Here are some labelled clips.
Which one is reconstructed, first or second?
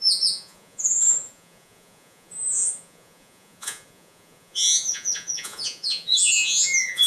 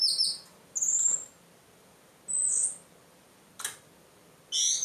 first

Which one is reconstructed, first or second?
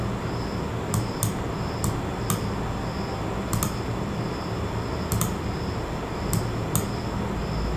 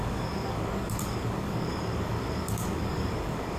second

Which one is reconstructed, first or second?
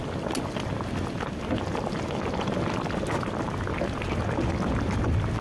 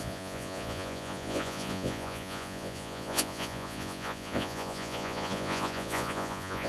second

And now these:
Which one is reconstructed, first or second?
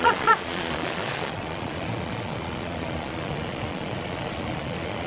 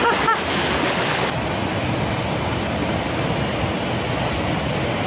first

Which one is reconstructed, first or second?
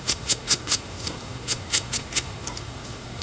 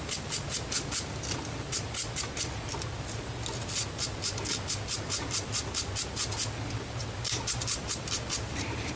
first